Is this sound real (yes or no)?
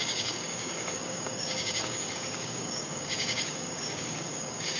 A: no